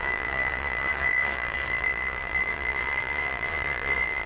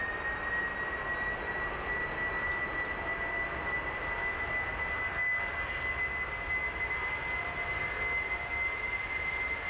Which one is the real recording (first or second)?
second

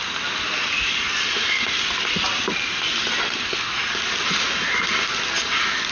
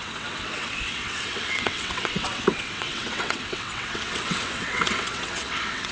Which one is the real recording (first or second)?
first